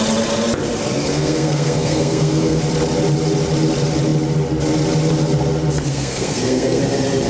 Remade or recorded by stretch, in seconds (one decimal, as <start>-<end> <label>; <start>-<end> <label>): 0.0-1.1 recorded; 1.1-2.6 remade; 2.6-5.9 recorded; 5.9-6.8 remade; 6.8-7.3 recorded